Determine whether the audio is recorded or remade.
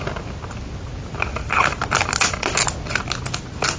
recorded